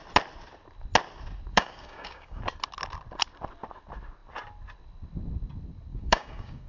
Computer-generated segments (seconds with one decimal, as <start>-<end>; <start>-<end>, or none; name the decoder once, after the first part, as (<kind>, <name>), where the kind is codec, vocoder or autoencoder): 1.5-2.4 (codec, DAC); 5.9-6.7